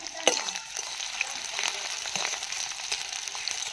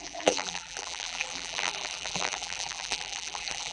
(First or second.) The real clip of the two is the first